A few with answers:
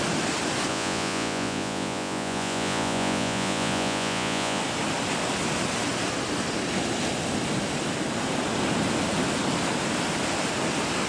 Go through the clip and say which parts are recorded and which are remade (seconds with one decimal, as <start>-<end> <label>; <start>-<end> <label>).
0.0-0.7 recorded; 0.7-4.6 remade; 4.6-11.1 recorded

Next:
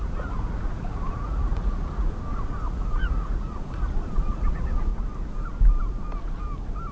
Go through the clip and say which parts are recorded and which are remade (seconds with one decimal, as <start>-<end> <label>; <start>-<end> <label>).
0.0-4.9 remade; 4.9-6.9 recorded

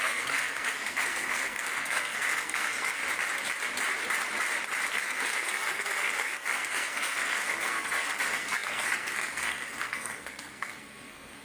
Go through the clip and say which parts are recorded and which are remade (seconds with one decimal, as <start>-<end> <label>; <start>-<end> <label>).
0.0-3.0 remade; 3.0-4.9 recorded; 4.9-11.4 remade